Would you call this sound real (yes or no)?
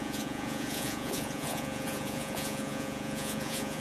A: no